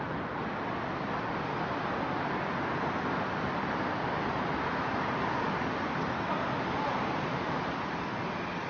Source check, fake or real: real